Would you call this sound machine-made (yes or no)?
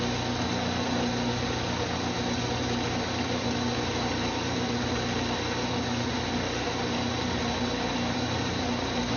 no